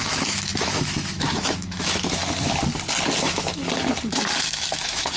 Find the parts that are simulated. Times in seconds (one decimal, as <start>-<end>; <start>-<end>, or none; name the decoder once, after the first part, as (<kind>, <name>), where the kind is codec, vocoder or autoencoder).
0.0-2.2 (autoencoder, DAC-VAE); 3.2-3.6; 4.4-5.2